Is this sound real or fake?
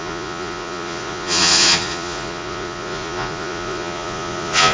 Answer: fake